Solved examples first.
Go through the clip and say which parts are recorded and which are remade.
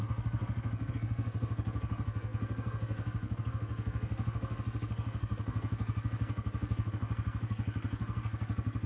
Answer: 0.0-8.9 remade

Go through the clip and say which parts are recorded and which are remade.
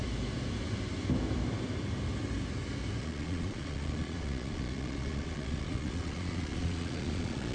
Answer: 0.0-3.0 recorded; 3.0-7.5 remade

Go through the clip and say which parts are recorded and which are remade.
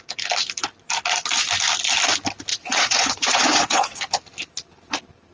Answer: 0.0-2.5 recorded; 2.5-4.0 remade; 4.0-5.3 recorded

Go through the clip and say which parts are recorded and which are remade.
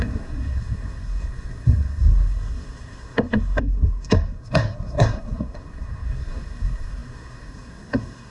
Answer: 0.0-8.3 remade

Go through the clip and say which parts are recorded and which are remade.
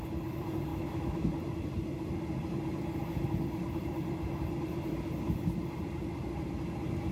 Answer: 0.0-0.7 recorded; 0.7-1.3 remade; 1.3-7.1 recorded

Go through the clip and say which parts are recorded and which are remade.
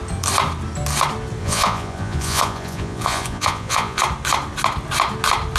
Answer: 0.0-1.4 recorded; 1.4-4.0 remade; 4.0-5.6 recorded